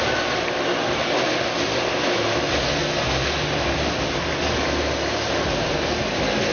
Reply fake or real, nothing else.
real